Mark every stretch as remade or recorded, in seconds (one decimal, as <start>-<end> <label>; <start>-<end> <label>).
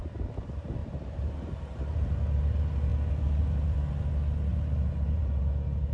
0.0-0.8 recorded; 0.8-2.1 remade; 2.1-4.5 recorded; 4.5-5.4 remade; 5.4-5.9 recorded